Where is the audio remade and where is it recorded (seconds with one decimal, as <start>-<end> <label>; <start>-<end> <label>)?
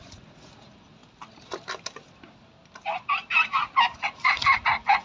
0.0-1.0 remade; 1.0-4.0 recorded; 4.0-5.0 remade